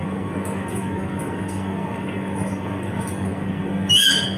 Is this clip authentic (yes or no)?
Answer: no